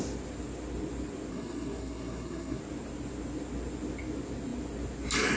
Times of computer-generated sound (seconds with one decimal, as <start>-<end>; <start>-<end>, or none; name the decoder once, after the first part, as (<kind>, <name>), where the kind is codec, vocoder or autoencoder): 1.3-2.6 (codec, SNAC)